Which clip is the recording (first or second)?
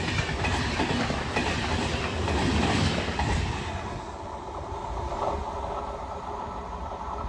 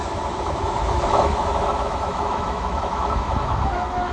first